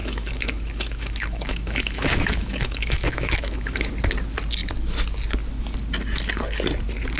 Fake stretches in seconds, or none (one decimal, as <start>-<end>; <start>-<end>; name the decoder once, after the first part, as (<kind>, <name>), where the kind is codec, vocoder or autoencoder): 0.0-3.9 (autoencoder, DAC-VAE)

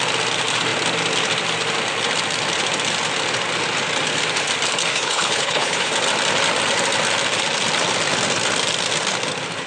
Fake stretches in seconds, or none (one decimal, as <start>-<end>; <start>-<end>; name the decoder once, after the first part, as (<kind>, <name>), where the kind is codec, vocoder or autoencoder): 4.9-5.9 (codec, HILCodec)